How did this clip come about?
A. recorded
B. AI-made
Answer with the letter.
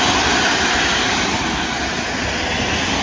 A